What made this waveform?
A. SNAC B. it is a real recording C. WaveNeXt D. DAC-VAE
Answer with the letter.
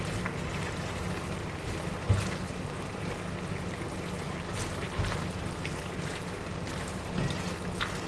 B